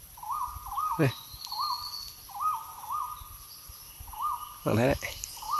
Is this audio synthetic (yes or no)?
no